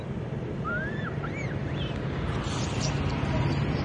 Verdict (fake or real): real